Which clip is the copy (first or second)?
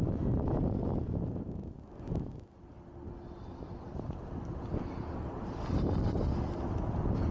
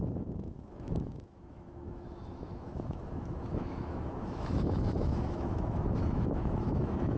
second